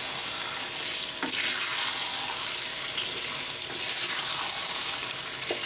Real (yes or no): yes